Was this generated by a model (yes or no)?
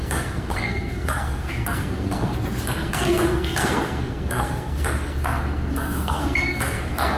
yes